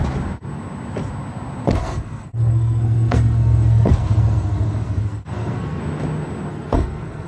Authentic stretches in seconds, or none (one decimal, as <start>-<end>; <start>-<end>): 0.0-1.8; 5.8-6.5